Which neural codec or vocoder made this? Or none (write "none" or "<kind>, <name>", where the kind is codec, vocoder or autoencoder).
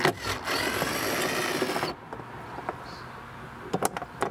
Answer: none